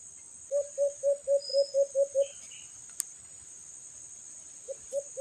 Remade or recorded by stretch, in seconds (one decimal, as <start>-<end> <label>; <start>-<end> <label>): 0.0-5.2 recorded